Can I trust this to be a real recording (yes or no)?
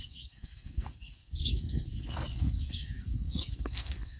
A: no